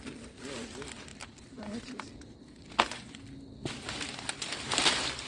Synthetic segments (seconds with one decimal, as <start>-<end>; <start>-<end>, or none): none